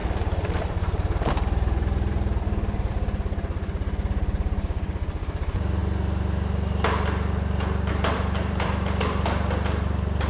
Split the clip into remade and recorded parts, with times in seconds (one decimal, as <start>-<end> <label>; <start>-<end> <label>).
0.0-5.8 remade; 5.8-7.9 recorded; 7.9-10.3 remade